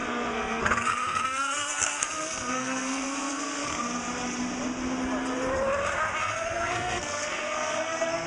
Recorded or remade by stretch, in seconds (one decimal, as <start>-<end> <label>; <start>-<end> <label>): 0.0-3.7 remade; 3.7-6.2 recorded; 6.2-8.3 remade